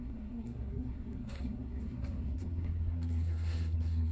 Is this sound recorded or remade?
remade